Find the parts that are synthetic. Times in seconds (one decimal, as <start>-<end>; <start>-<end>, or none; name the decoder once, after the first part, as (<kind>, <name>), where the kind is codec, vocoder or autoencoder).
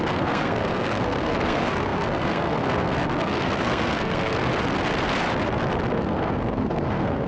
0.0-4.5 (codec, SNAC); 5.9-7.3